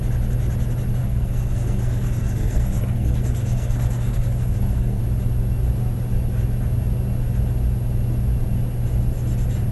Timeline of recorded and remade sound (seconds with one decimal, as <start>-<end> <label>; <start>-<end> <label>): 0.0-1.0 recorded; 1.0-5.0 remade; 5.0-9.7 recorded

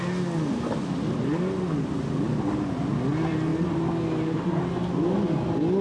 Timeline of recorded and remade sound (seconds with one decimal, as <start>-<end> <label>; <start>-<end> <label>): 0.0-5.8 recorded